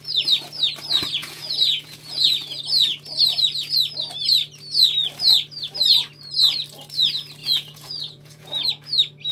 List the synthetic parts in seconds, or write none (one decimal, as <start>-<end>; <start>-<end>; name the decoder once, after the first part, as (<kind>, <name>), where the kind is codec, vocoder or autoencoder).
1.2-2.6 (vocoder, Vocos); 7.4-8.7